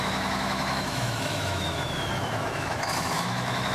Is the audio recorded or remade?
remade